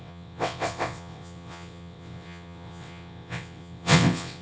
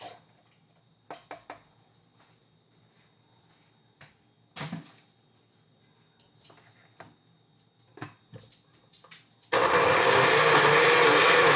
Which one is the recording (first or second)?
second